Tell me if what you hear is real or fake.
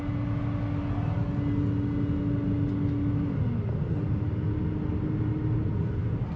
real